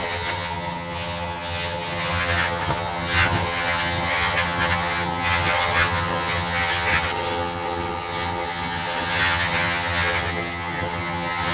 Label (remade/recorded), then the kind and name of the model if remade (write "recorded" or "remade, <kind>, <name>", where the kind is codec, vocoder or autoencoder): remade, vocoder, HiFi-GAN